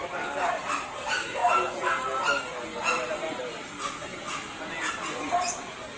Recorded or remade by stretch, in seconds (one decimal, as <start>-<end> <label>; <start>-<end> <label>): 0.0-1.4 remade; 1.4-3.6 recorded; 3.6-4.1 remade; 4.1-4.9 recorded; 4.9-6.0 remade